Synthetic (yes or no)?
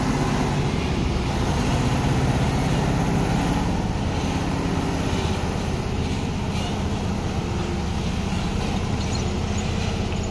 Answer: no